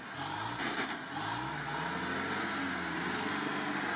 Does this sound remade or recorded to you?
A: recorded